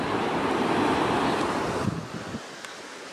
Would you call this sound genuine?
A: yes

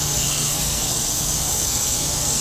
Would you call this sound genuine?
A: no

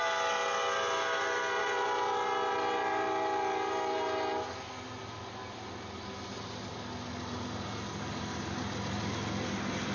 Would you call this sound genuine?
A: yes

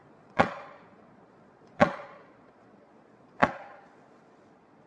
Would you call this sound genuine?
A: no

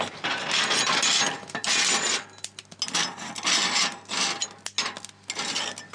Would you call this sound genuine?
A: yes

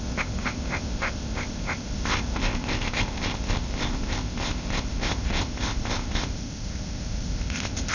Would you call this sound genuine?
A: no